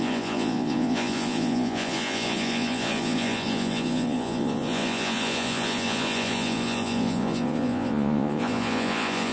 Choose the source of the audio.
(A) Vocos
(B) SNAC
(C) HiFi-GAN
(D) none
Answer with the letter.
A